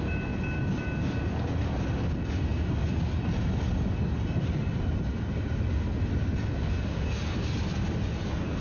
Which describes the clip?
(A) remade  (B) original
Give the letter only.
B